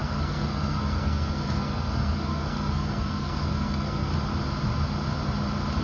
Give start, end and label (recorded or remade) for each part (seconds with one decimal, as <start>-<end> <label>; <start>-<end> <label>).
0.0-4.1 remade; 4.1-5.8 recorded